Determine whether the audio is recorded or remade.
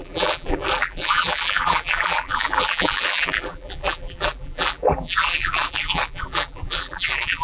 remade